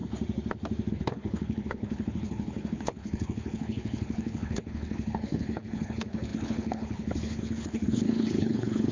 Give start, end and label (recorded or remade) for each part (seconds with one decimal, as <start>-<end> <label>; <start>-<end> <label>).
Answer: 0.0-0.9 recorded; 0.9-8.9 remade